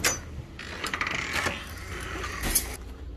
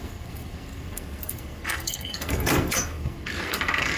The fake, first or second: second